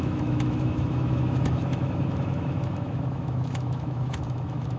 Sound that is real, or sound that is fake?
fake